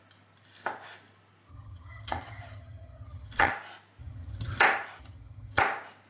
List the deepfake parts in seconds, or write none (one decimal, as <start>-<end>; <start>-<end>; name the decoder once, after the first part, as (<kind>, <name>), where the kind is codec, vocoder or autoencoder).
1.5-3.5 (vocoder, HiFi-GAN); 4.0-4.6; 5.0-5.6